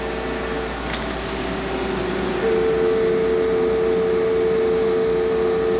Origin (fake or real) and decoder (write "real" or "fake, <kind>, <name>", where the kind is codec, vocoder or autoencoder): real